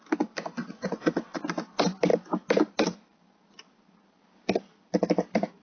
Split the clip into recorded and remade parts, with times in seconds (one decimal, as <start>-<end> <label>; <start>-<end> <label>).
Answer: 0.0-0.6 recorded; 0.6-1.4 remade; 1.4-5.6 recorded